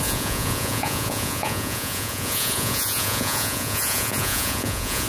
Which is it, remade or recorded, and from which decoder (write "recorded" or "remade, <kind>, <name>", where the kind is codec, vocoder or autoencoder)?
remade, vocoder, Vocos